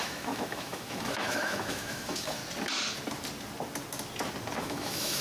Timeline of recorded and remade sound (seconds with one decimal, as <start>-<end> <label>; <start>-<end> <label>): 0.0-2.4 remade; 2.4-4.6 recorded; 4.6-5.2 remade